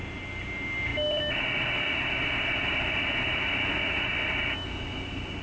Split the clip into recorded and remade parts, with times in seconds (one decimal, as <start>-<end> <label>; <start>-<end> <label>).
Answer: 0.0-5.4 recorded